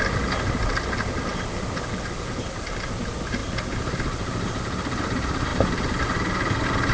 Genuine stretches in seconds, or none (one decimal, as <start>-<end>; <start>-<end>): 0.0-6.9